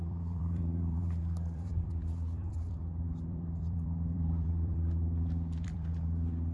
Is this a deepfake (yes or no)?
yes